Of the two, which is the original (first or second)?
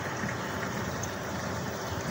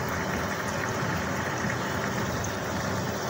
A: second